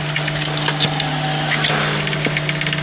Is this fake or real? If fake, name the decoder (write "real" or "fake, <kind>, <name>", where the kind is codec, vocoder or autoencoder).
real